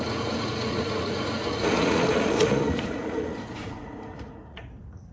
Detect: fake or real fake